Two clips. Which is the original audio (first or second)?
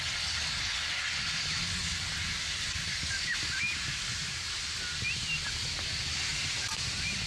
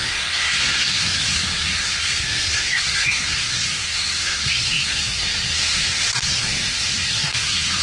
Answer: first